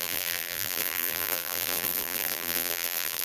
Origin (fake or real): fake